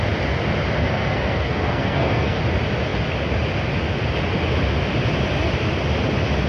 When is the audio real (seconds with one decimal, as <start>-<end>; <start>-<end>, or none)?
0.0-0.8; 2.4-6.5